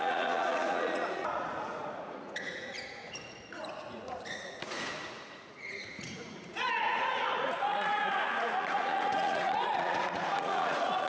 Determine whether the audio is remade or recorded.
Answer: remade